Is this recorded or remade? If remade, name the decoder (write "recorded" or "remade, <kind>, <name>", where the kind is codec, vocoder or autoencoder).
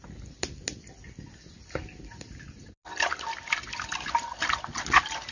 recorded